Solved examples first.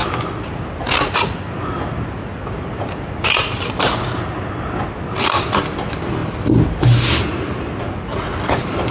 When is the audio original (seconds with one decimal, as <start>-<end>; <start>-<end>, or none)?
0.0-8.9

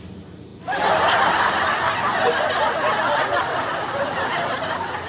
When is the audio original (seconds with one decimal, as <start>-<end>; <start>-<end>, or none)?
0.5-3.6

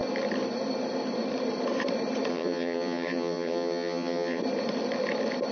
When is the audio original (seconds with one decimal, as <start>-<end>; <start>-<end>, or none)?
0.0-2.3; 4.4-5.5

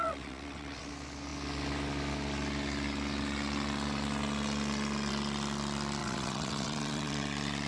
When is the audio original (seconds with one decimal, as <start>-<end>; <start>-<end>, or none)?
0.9-6.0; 7.2-7.7

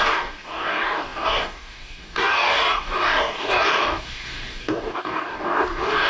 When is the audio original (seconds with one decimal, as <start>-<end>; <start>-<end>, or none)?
none